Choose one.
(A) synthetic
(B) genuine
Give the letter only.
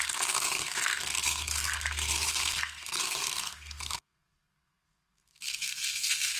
A